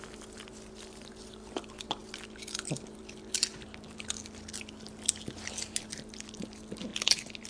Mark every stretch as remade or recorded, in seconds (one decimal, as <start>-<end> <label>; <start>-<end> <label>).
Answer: 0.0-7.5 recorded